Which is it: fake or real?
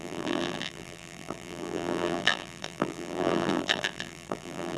fake